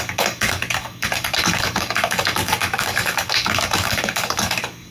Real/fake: fake